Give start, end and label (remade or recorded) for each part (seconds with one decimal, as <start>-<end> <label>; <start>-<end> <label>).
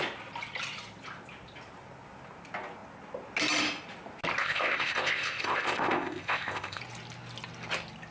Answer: 0.0-4.4 recorded; 4.4-6.8 remade; 6.8-8.1 recorded